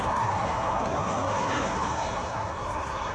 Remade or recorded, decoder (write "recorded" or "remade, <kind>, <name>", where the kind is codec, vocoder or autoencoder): remade, codec, SNAC